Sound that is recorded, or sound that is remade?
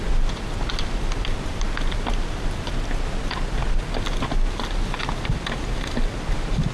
recorded